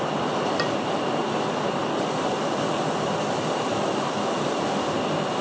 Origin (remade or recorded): remade